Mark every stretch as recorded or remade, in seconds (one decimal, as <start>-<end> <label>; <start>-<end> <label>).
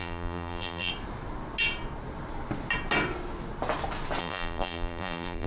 0.0-0.9 remade; 0.9-4.2 recorded; 4.2-5.5 remade